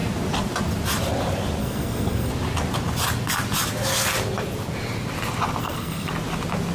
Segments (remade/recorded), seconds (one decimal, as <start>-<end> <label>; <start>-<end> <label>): 0.0-1.6 recorded; 1.6-2.3 remade; 2.3-5.6 recorded; 5.6-6.1 remade; 6.1-6.7 recorded